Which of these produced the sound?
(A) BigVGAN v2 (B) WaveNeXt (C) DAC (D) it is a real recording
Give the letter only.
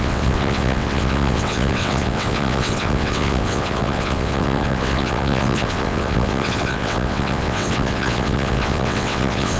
B